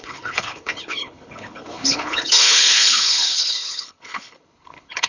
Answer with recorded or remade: remade